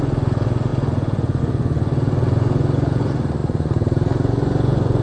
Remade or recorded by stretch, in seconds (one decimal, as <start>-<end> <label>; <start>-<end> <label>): 0.0-5.0 remade